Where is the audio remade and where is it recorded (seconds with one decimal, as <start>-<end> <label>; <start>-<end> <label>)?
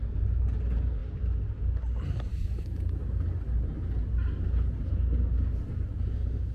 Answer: 0.0-6.5 recorded